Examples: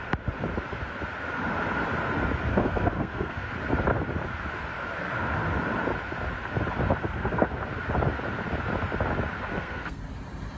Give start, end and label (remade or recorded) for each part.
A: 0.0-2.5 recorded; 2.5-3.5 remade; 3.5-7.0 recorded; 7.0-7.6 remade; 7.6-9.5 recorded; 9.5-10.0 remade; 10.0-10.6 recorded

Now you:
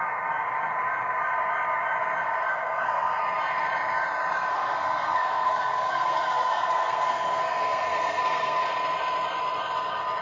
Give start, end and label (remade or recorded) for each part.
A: 0.0-2.5 recorded; 2.5-3.2 remade; 3.2-4.5 recorded; 4.5-8.6 remade; 8.6-10.2 recorded

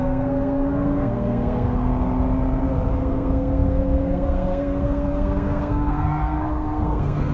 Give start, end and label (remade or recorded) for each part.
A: 0.0-1.9 remade; 1.9-2.9 recorded; 2.9-7.3 remade

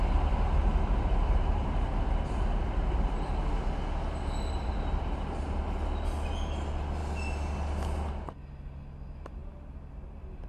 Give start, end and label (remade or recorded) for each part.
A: 0.0-10.5 recorded

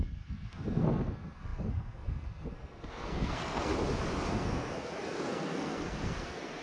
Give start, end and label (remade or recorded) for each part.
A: 0.0-3.7 remade; 3.7-4.3 recorded; 4.3-6.6 remade

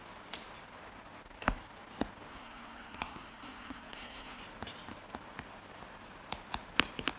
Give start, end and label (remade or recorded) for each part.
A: 0.0-2.3 recorded; 2.3-4.4 remade; 4.4-7.2 recorded

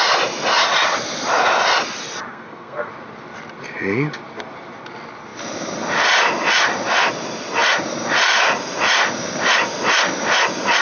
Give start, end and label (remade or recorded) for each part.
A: 0.0-2.3 recorded; 2.3-2.9 remade; 2.9-10.8 recorded